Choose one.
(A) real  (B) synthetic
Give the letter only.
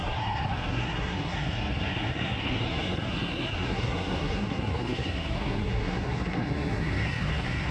B